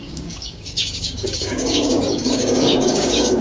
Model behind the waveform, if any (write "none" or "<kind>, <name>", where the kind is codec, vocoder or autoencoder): codec, DAC